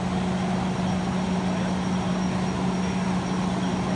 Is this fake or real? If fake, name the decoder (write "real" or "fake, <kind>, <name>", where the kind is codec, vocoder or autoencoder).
real